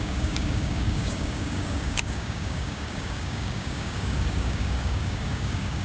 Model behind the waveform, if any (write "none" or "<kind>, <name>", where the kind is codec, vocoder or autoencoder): codec, DAC